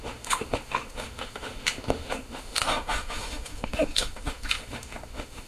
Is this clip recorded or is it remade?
remade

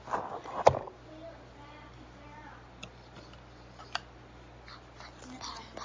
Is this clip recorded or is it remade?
recorded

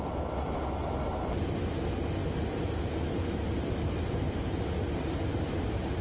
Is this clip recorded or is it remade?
recorded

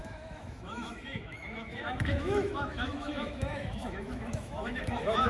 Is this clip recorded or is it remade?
remade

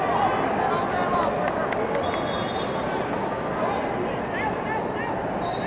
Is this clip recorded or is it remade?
recorded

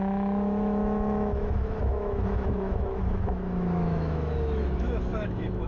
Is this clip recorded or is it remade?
remade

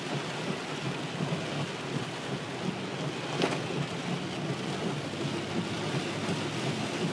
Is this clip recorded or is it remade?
recorded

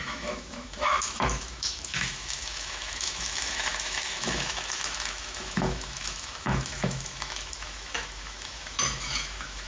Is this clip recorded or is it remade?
remade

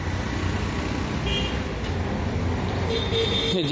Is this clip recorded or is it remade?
recorded